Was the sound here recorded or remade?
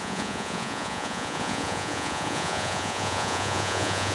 remade